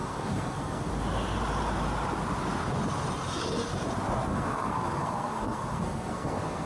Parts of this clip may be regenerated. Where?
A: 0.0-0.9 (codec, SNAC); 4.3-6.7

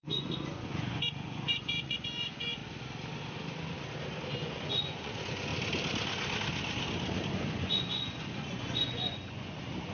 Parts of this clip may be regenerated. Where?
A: 0.0-2.6 (vocoder, Vocos); 4.3-5.5; 7.3-9.9

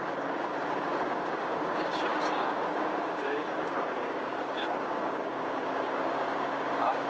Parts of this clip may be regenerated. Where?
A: 0.0-0.5 (codec, DAC); 1.1-7.1

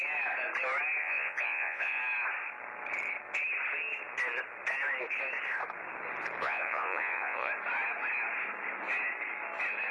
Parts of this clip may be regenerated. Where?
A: 1.0-2.0 (vocoder, Vocos); 6.4-7.5